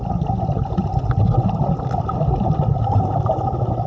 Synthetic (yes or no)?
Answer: no